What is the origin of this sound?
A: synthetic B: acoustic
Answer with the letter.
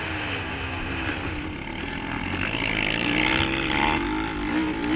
B